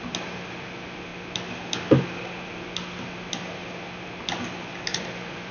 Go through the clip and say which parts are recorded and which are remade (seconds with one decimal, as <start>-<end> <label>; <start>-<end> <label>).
0.0-5.5 recorded